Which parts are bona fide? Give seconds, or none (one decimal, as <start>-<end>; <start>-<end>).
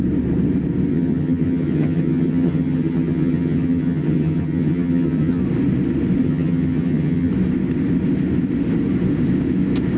0.0-0.9; 5.4-6.2; 7.3-10.0